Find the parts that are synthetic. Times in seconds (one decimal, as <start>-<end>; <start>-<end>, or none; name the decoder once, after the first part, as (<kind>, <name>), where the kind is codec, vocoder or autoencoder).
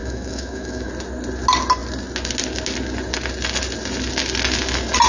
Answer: 0.0-0.9 (autoencoder, DAC-VAE)